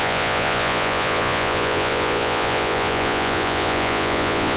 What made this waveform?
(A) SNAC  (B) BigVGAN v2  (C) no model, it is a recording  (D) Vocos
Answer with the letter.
D